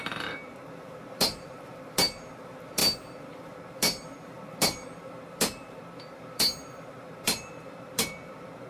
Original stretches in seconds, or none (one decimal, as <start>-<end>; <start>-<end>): none